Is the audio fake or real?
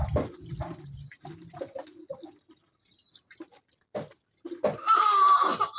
real